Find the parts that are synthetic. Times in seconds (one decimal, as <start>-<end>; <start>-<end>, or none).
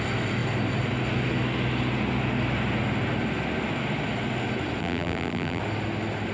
4.8-5.6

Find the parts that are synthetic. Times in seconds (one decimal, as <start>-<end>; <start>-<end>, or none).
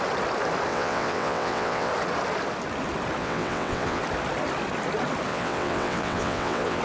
0.7-1.9; 3.2-4.0; 5.3-6.8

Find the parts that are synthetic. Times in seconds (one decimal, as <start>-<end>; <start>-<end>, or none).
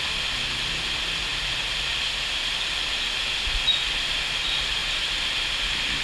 none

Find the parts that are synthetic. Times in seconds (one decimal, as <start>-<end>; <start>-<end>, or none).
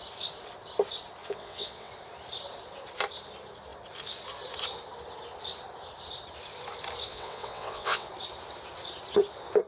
1.2-1.9; 7.1-8.1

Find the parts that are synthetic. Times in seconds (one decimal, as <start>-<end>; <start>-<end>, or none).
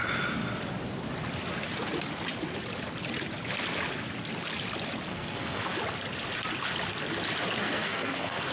5.1-5.8; 7.6-8.5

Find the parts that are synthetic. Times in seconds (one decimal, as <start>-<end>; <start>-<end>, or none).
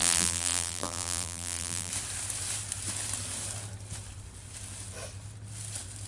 0.0-1.9